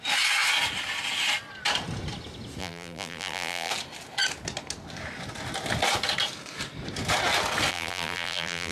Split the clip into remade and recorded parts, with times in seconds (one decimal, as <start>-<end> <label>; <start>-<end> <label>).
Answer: 0.0-2.6 recorded; 2.6-3.7 remade; 3.7-7.7 recorded; 7.7-8.7 remade